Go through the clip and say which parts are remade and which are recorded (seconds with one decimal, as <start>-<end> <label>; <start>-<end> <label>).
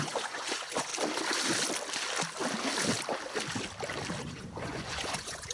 0.0-0.9 remade; 0.9-4.2 recorded; 4.2-5.5 remade